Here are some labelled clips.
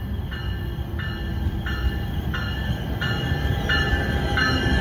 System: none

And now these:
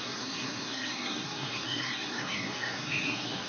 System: codec, SNAC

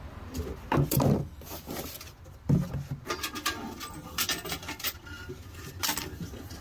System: none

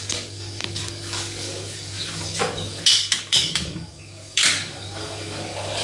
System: codec, DAC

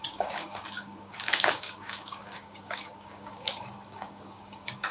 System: codec, DAC